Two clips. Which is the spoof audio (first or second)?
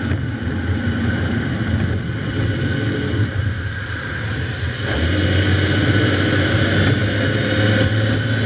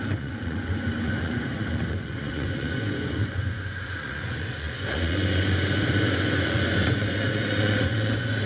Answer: second